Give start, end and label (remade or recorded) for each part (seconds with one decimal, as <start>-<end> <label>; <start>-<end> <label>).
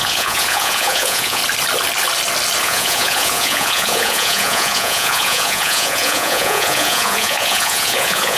0.0-1.4 remade; 1.4-2.6 recorded; 2.6-8.4 remade